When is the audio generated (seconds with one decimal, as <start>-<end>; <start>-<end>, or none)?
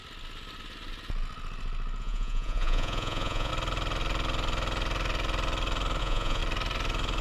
2.0-3.5; 6.0-6.4